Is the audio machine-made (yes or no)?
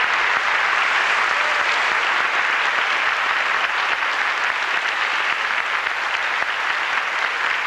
no